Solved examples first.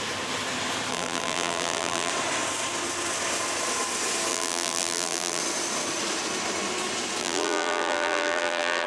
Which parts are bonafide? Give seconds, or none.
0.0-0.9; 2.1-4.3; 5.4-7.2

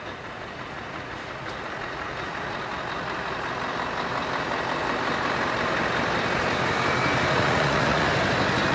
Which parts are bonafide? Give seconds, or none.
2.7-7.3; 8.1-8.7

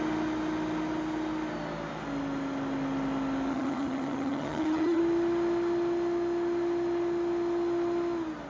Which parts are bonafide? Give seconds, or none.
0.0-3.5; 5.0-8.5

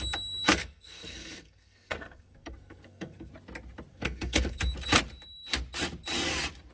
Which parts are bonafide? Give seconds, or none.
0.0-0.5; 3.3-3.9; 4.6-6.7

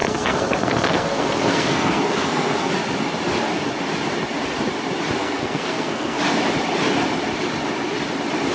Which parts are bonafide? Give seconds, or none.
2.7-5.2; 6.2-8.5